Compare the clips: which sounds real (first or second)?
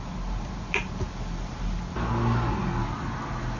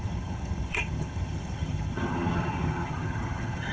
first